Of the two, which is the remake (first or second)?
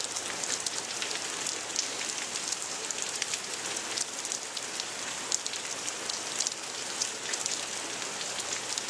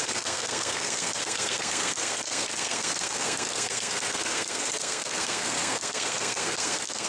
second